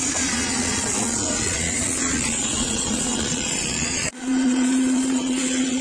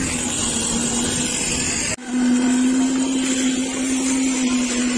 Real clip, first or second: second